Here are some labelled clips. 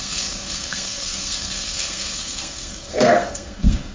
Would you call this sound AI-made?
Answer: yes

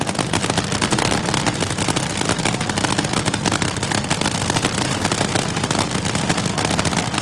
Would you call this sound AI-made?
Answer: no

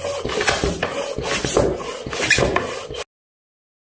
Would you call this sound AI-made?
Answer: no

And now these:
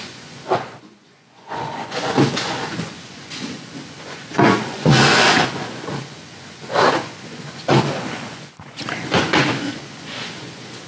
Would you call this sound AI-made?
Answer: yes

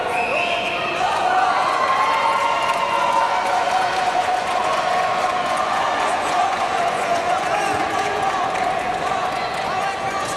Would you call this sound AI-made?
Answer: yes